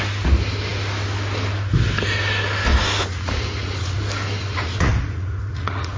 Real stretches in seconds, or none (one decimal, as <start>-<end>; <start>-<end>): 0.0-3.0; 4.0-4.4

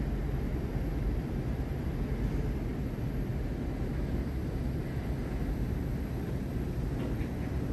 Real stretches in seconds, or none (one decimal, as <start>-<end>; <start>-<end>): 0.0-7.7

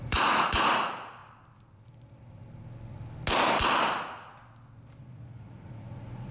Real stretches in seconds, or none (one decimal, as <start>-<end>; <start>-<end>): 1.2-5.0

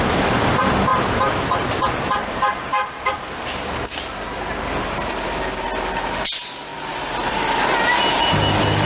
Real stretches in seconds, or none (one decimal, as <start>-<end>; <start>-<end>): 0.0-8.9

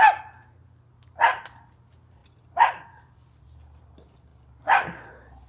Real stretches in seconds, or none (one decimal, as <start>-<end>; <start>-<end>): 0.0-2.2; 3.8-4.3; 5.1-5.5

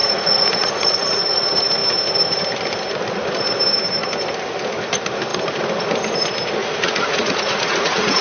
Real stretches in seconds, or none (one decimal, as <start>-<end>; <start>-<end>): 1.2-6.6

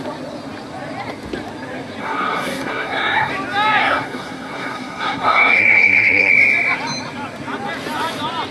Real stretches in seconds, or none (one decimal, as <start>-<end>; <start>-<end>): 0.0-2.0; 3.3-3.8; 6.3-8.5